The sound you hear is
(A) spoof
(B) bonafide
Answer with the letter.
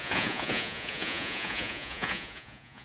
A